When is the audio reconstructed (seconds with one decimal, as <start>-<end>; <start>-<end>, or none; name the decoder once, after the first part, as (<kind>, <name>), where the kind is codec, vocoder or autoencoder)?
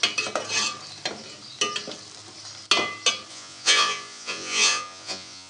3.3-5.5 (vocoder, Vocos)